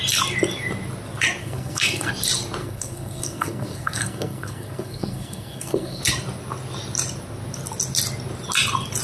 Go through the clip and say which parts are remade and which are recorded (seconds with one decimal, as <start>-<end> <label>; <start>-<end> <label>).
0.0-1.4 recorded; 1.4-2.1 remade; 2.1-2.6 recorded; 2.6-6.0 remade; 6.0-9.0 recorded